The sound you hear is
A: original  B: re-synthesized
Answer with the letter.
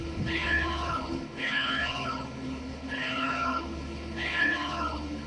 B